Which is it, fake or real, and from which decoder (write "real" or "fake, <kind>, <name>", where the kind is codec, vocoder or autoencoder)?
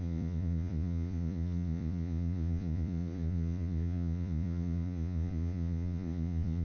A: fake, vocoder, Vocos